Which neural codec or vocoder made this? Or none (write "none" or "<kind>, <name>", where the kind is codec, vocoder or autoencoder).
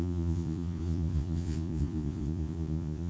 vocoder, Vocos